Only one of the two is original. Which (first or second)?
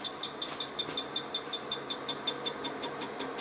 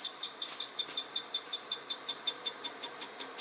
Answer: first